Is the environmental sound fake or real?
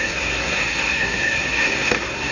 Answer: fake